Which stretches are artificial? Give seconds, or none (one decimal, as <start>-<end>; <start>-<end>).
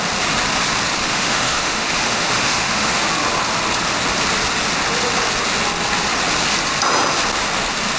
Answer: 1.0-3.0